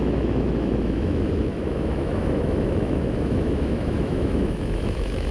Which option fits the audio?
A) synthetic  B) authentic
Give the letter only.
A